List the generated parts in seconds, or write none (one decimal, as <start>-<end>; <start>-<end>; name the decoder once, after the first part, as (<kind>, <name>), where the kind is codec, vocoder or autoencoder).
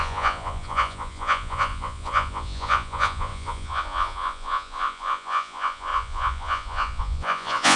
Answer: 0.0-7.8 (vocoder, Vocos)